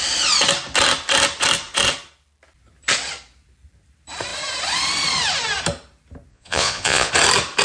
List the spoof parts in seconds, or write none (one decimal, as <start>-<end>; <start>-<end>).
6.3-7.1